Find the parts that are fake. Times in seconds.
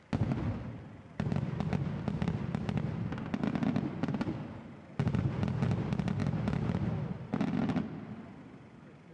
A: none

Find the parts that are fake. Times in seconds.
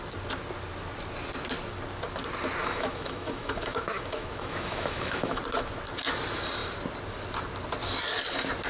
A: 2.6-5.4 (autoencoder, DAC-VAE)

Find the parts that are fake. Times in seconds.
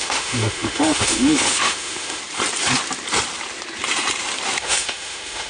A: 0.0-2.2 (autoencoder, DAC-VAE); 4.6-5.5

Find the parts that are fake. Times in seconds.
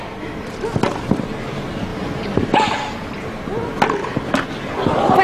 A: none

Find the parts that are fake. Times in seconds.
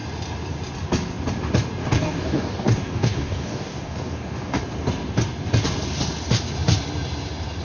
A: 1.8-4.6 (codec, DAC)